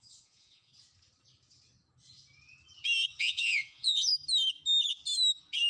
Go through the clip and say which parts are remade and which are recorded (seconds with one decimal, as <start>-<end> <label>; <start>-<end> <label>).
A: 0.0-0.7 remade; 0.7-3.2 recorded; 3.2-4.1 remade; 4.1-5.7 recorded